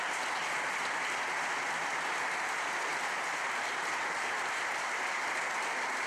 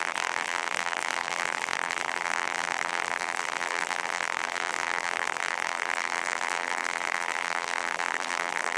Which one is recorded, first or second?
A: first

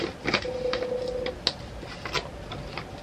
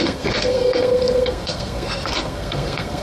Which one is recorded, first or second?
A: first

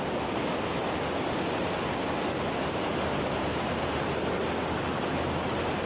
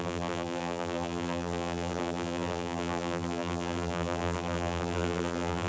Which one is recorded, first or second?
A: first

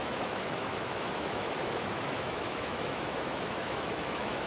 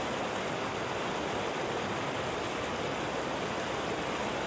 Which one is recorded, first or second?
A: second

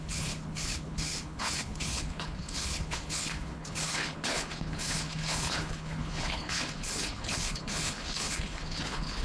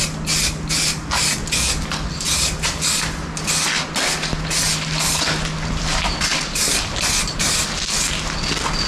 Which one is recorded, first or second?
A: second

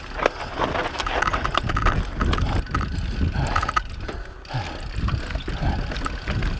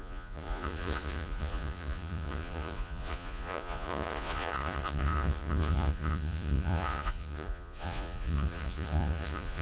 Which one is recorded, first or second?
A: first